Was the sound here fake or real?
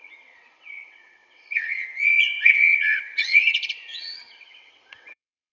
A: fake